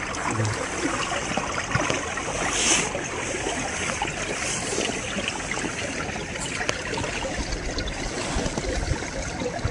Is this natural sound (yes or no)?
yes